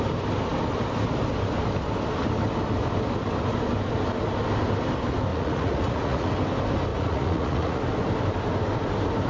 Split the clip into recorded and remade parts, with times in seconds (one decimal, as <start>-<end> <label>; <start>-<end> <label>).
0.0-5.3 recorded; 5.3-6.3 remade; 6.3-6.9 recorded; 6.9-7.8 remade; 7.8-9.3 recorded